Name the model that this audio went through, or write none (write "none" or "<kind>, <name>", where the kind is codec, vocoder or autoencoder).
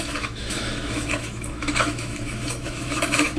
autoencoder, DAC-VAE